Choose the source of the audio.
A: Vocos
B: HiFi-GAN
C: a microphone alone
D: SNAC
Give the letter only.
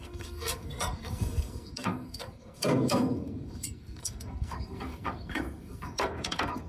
D